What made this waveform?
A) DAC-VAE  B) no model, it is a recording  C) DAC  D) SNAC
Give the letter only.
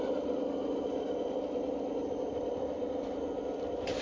B